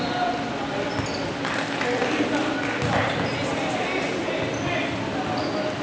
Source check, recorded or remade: recorded